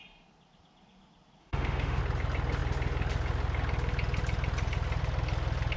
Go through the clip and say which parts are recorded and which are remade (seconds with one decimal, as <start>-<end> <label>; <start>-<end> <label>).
0.0-1.4 recorded; 1.4-2.0 remade; 2.0-5.8 recorded